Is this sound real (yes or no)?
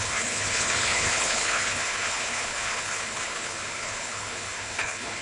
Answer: no